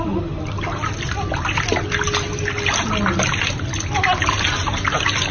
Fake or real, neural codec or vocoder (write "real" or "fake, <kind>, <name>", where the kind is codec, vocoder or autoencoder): real